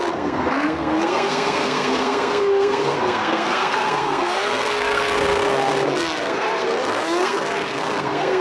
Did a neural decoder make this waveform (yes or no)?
yes